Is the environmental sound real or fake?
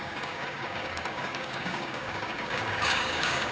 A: fake